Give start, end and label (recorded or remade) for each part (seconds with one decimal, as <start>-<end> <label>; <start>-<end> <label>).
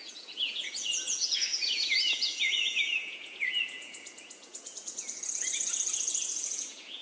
0.0-7.0 remade